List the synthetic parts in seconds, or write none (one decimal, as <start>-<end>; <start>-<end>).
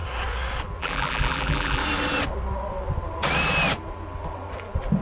0.8-1.8